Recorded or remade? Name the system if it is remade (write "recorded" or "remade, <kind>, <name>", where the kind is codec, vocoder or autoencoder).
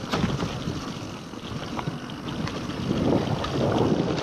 recorded